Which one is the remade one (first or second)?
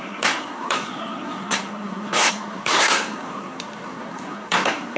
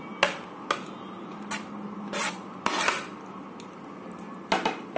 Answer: first